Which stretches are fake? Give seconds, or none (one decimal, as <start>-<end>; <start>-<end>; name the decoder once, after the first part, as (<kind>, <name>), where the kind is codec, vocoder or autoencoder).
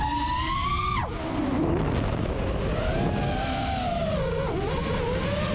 none